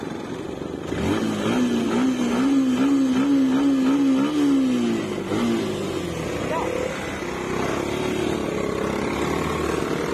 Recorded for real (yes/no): yes